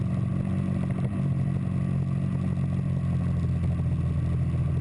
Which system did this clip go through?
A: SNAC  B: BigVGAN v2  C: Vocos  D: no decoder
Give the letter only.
D